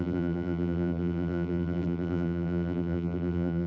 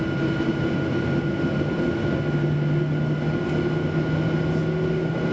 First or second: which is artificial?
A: first